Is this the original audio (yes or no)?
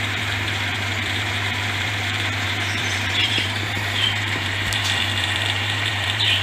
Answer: no